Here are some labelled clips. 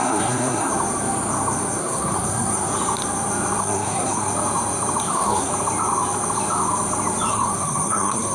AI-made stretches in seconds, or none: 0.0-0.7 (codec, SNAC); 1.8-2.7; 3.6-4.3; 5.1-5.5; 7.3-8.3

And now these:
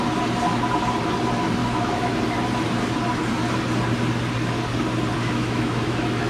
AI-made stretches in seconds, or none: 1.6-2.2 (autoencoder, DAC-VAE); 5.2-6.3